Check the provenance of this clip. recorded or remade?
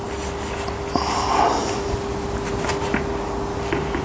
recorded